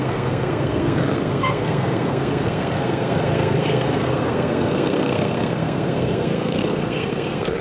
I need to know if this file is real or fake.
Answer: fake